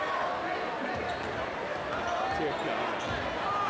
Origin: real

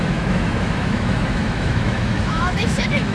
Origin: fake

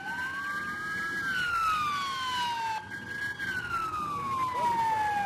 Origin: real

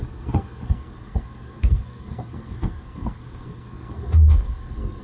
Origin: fake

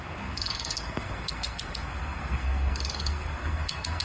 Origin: fake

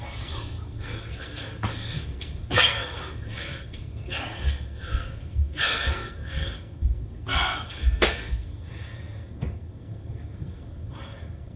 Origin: fake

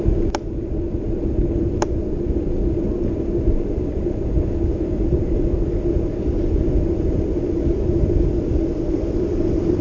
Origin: real